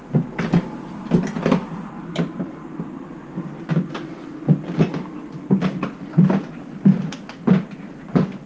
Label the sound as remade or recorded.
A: recorded